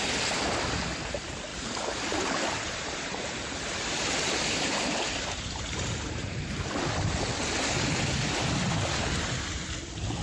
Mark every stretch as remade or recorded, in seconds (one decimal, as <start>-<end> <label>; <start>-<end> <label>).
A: 0.0-1.5 recorded; 1.5-6.4 remade; 6.4-10.2 recorded